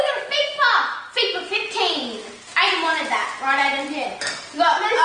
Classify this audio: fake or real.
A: real